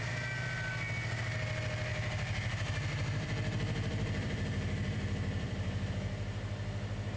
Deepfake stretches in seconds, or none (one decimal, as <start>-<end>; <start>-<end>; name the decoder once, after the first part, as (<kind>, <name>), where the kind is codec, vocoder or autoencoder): 1.9-5.9 (vocoder, BigVGAN v2)